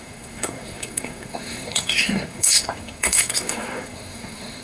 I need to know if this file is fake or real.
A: fake